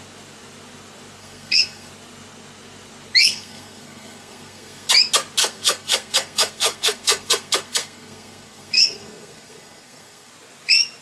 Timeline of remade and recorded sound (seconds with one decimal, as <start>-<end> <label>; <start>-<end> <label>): 0.0-1.2 recorded; 1.2-1.9 remade; 1.9-3.2 recorded; 3.2-4.9 remade; 4.9-5.4 recorded; 5.4-10.3 remade; 10.3-11.0 recorded